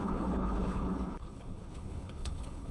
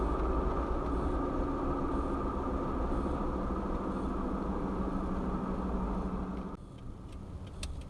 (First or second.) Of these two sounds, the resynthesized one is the first